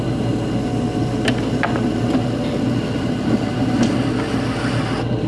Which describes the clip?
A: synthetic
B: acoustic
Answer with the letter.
B